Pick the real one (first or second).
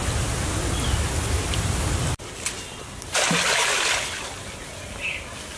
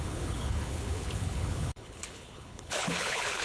first